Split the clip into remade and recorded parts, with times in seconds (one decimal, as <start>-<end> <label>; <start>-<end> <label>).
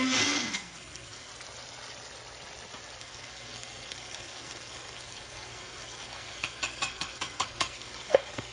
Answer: 0.0-1.3 remade; 1.3-3.0 recorded; 3.0-8.5 remade